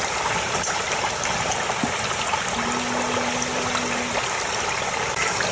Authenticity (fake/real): real